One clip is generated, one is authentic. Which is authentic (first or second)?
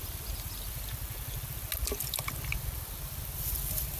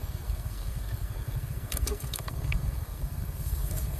first